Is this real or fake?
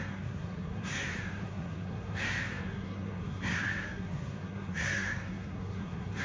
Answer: fake